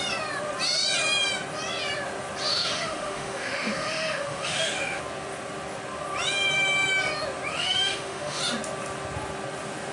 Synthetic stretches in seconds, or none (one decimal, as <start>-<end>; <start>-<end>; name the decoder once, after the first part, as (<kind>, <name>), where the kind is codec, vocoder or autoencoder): 2.5-5.0 (autoencoder, DAC-VAE); 7.5-8.4